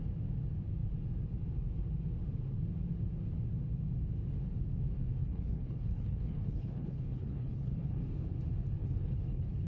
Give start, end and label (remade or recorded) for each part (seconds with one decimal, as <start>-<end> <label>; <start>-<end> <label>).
0.0-5.2 recorded; 5.2-8.0 remade; 8.0-8.8 recorded; 8.8-9.7 remade